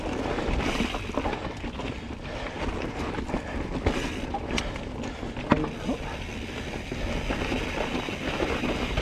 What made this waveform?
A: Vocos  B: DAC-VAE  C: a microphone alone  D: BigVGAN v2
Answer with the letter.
C